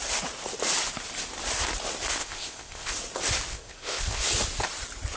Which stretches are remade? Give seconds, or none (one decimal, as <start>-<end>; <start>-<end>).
2.2-2.9; 3.5-4.2